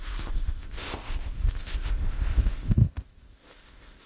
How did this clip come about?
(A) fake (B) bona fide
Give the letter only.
A